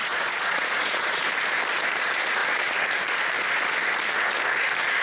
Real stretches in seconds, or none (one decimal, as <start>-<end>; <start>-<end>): 1.2-5.0